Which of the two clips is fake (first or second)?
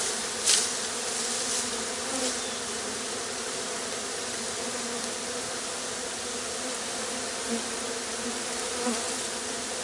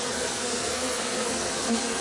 second